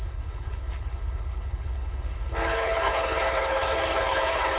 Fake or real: fake